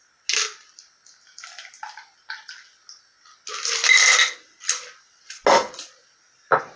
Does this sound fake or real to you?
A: real